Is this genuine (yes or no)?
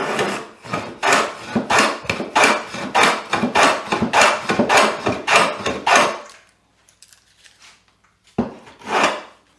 yes